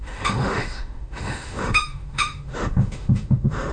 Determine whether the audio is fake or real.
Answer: fake